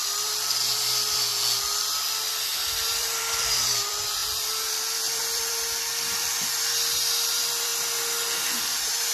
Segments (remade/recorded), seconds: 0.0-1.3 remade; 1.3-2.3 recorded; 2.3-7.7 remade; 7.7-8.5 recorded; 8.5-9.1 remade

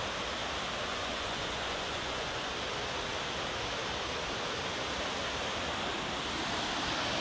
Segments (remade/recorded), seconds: 0.0-0.9 recorded; 0.9-2.5 remade; 2.5-7.2 recorded